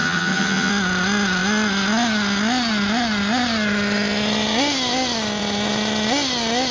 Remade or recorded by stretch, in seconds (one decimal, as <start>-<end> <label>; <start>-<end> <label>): 0.0-0.7 remade; 0.7-6.7 recorded

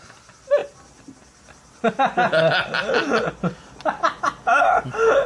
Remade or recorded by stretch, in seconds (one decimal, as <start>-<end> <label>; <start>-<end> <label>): 0.0-4.5 recorded; 4.5-5.3 remade

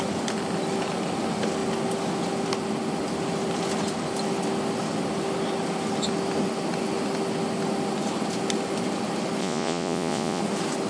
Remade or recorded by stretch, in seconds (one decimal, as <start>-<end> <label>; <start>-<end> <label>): 0.0-9.4 recorded; 9.4-10.4 remade; 10.4-10.9 recorded

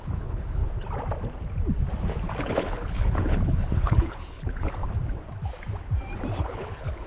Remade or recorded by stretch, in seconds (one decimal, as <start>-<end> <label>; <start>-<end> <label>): 0.0-0.6 remade; 0.6-2.4 recorded; 2.4-4.8 remade; 4.8-6.4 recorded; 6.4-7.1 remade